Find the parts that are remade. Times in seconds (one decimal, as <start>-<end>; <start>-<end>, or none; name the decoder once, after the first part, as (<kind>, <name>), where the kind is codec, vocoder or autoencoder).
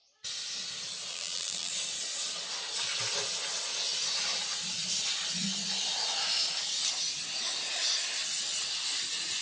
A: 1.1-1.7 (vocoder, BigVGAN v2)